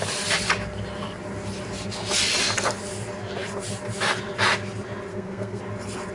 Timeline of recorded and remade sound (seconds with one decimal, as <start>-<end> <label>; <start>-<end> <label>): 0.0-5.1 recorded; 5.1-5.6 remade; 5.6-6.1 recorded